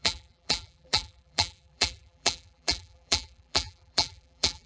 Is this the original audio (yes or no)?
no